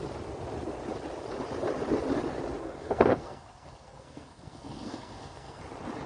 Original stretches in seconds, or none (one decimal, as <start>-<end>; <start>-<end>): 0.0-2.6; 5.6-6.1